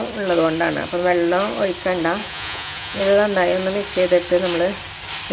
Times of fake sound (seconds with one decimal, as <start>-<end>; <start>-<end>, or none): 2.2-3.0